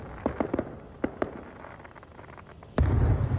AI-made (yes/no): no